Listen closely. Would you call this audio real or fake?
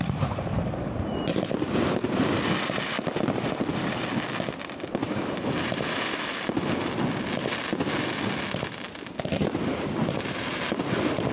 fake